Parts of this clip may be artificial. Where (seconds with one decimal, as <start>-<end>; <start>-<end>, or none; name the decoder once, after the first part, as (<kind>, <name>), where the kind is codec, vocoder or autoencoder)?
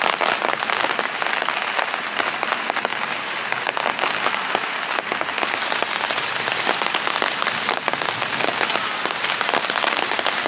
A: none